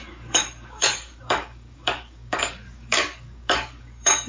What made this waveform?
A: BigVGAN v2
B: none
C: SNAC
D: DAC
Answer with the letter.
D